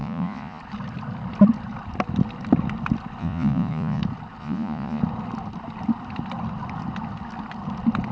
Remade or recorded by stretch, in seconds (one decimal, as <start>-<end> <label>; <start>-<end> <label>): 0.0-0.6 remade; 0.6-3.2 recorded; 3.2-4.0 remade; 4.0-4.4 recorded; 4.4-5.0 remade; 5.0-8.1 recorded